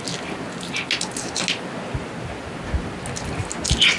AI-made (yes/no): no